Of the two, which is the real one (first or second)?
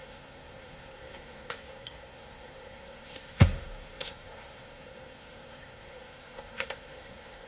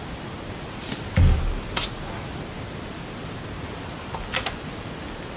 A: second